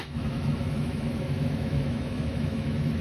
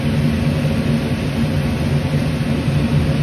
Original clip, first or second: second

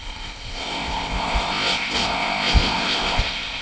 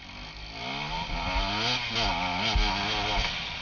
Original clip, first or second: second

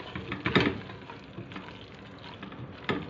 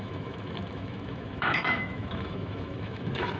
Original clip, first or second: first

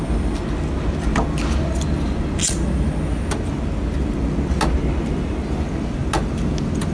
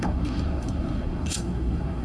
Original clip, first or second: first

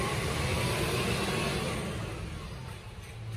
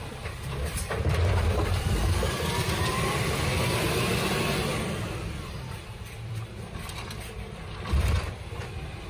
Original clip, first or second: first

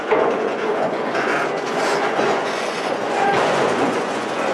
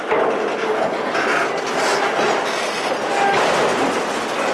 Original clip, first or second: second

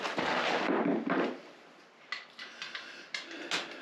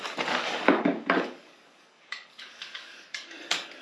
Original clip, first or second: first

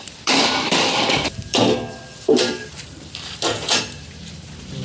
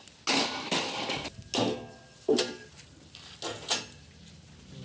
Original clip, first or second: second